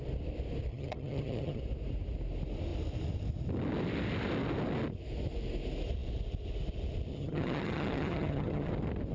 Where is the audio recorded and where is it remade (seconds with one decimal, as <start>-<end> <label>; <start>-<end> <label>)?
0.0-0.7 recorded; 0.7-1.6 remade; 1.6-7.1 recorded; 7.1-8.7 remade; 8.7-9.1 recorded